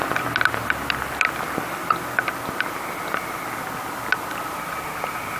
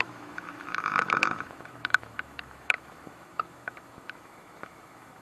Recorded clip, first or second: first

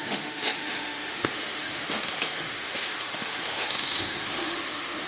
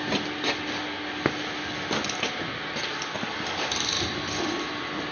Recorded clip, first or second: second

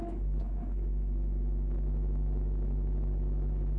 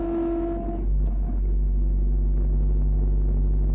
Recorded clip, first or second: second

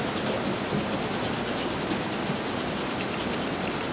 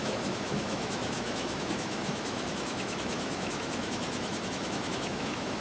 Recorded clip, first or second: first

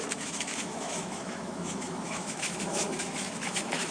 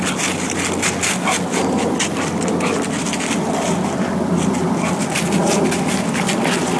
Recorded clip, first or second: second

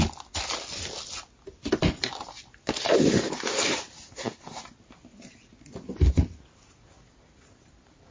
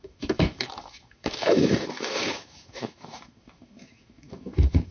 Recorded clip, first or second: first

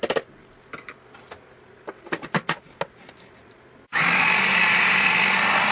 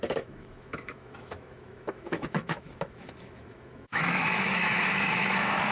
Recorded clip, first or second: first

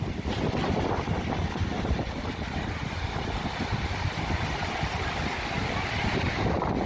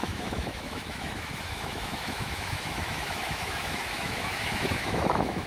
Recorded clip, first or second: first